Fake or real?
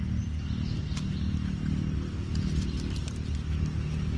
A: real